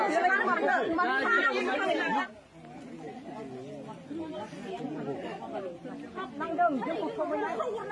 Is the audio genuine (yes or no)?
yes